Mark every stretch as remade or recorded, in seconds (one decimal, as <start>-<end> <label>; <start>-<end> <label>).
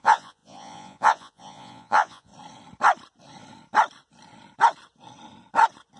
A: 0.0-2.3 remade; 2.3-6.0 recorded